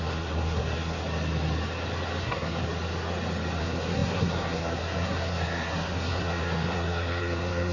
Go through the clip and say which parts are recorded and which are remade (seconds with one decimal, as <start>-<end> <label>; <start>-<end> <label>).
0.0-1.0 remade; 1.0-2.2 recorded; 2.2-2.6 remade; 2.6-3.6 recorded; 3.6-7.7 remade